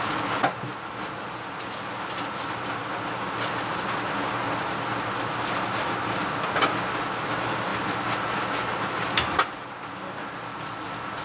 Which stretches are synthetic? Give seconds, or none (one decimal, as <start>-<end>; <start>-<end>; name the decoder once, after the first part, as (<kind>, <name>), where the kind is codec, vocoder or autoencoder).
none